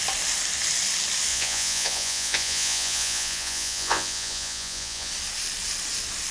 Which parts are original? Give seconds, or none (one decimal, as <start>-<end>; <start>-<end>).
0.0-1.3; 5.1-6.3